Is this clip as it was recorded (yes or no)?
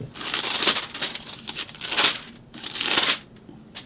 yes